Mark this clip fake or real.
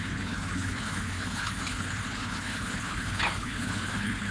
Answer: fake